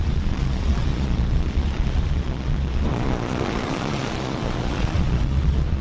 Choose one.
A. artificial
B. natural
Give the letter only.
A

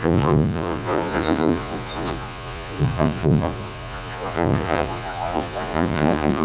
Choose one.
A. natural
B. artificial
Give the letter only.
B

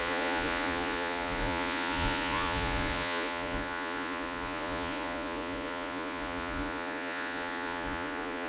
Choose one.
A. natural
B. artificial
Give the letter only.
B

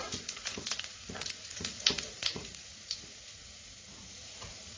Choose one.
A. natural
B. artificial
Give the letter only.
B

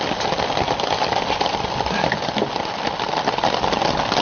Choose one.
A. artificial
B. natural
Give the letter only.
B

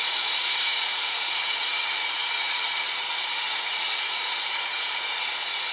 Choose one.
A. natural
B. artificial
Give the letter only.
B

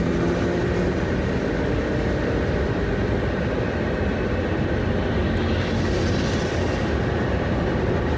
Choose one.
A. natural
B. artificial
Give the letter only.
A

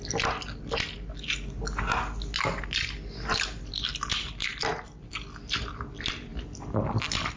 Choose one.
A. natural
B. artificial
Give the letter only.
A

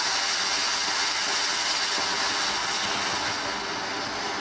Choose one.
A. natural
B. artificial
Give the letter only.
A